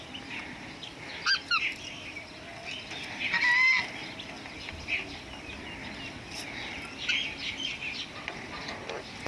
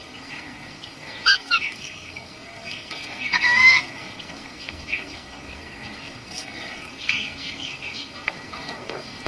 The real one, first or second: first